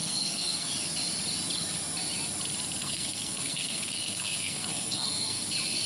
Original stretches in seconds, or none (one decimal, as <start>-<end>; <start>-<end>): 0.7-2.8; 5.4-5.9